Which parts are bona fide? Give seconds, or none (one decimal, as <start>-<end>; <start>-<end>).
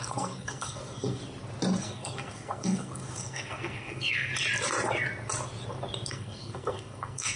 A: 1.2-1.8; 4.3-6.1